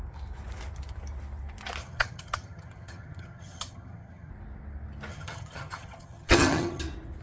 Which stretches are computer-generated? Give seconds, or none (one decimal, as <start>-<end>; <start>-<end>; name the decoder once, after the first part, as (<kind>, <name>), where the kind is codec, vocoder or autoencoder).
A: 1.8-4.3 (vocoder, HiFi-GAN); 5.1-6.8